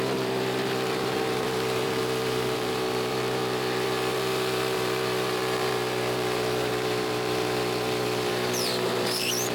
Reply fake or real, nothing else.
fake